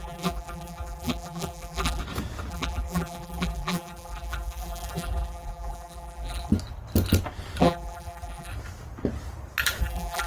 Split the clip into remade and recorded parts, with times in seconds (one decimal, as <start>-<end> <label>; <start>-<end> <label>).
0.0-2.0 remade; 2.0-2.5 recorded; 2.5-6.5 remade; 6.5-7.6 recorded; 7.6-8.5 remade; 8.5-9.8 recorded; 9.8-10.3 remade